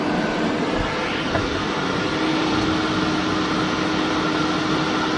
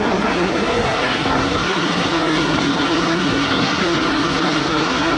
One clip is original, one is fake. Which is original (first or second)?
first